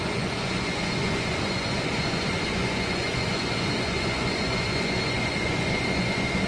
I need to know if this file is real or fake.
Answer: fake